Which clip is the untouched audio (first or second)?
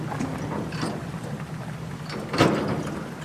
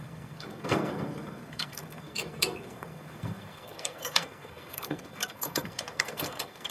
first